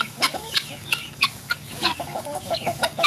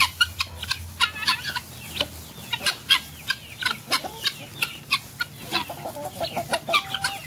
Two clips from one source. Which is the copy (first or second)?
first